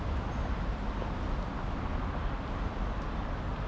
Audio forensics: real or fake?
real